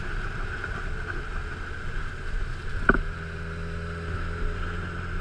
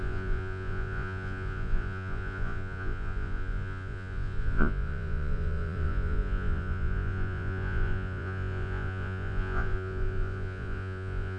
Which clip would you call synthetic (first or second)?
second